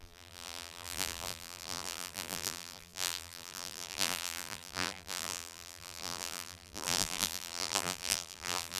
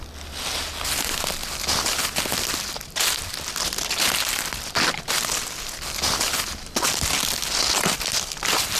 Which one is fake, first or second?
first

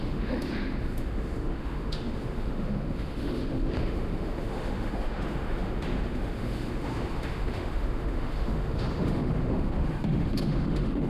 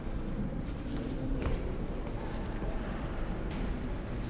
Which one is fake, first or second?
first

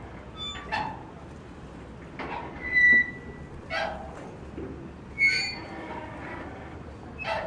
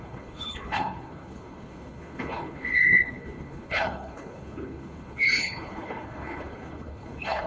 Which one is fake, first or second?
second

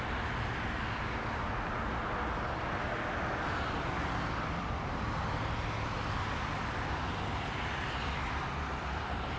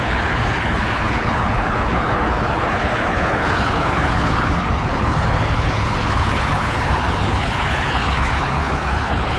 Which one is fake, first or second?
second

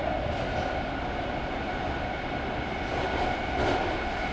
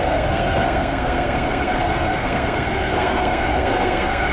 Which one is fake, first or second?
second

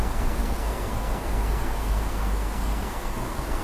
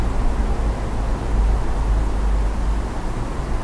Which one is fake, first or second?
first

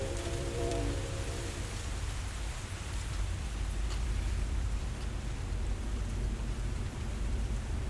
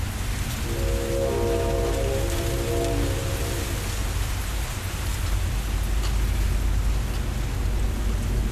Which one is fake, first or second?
first